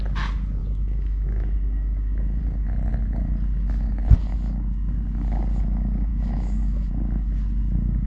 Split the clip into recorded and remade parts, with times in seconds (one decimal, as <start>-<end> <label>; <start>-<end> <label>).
0.0-0.6 recorded; 0.6-2.4 remade; 2.4-6.1 recorded; 6.1-6.9 remade; 6.9-8.1 recorded